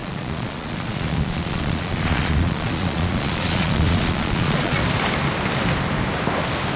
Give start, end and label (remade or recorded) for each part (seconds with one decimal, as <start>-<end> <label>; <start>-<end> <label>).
0.0-4.8 remade; 4.8-6.8 recorded